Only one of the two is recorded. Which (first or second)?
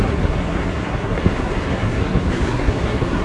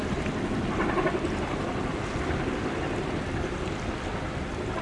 second